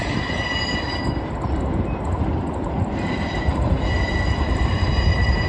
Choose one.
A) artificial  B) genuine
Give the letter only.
B